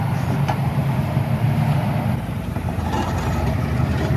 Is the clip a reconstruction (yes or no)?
yes